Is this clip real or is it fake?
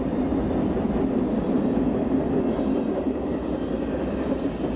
real